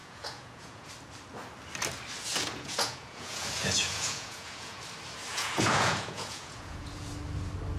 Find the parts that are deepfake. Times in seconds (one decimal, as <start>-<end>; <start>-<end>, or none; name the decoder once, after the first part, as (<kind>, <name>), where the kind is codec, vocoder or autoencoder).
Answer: 0.0-0.9 (vocoder, Vocos); 2.3-4.8; 5.3-7.1

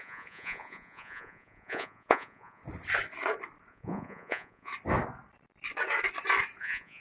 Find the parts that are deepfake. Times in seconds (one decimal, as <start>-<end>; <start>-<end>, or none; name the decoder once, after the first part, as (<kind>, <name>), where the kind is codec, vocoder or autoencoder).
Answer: 0.0-2.6 (vocoder, Vocos); 3.7-4.7; 6.6-7.0

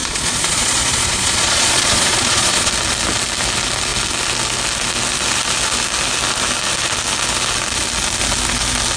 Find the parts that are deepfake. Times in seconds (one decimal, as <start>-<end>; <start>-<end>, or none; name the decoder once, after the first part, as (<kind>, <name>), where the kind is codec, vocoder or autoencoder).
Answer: 0.0-2.7 (vocoder, Vocos)

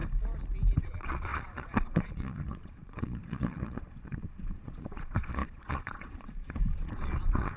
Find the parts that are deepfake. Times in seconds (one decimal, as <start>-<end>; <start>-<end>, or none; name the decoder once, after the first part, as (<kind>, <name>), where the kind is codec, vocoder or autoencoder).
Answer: 0.8-7.6 (vocoder, Vocos)